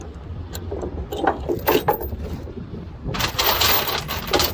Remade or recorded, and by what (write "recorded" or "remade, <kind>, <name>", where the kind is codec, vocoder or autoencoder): recorded